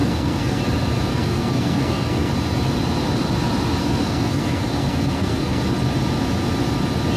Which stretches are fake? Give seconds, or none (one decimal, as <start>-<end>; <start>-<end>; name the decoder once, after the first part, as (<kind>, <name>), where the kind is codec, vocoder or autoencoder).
0.0-0.6 (codec, SNAC); 1.1-2.3; 3.8-5.6